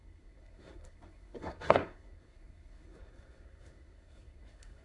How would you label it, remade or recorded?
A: remade